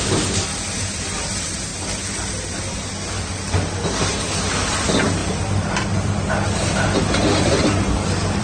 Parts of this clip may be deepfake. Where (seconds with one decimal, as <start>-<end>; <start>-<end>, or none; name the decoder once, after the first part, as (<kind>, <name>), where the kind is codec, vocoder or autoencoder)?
0.0-1.7 (vocoder, BigVGAN v2); 4.5-8.4